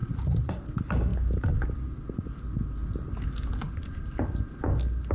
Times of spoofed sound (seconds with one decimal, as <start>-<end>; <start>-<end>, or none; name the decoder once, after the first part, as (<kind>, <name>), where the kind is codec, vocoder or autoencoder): 0.0-0.5 (vocoder, Vocos)